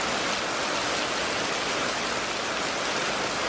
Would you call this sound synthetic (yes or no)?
no